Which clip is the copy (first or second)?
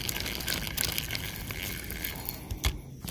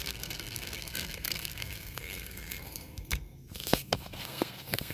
second